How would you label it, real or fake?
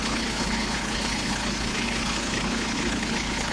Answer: fake